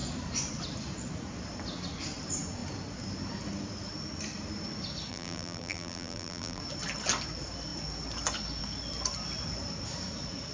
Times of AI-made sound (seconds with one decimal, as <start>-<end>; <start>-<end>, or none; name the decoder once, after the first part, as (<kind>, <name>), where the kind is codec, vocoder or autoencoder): 5.1-6.6 (vocoder, BigVGAN v2)